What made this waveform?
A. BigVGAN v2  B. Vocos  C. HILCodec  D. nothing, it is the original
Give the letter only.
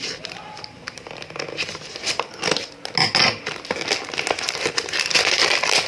D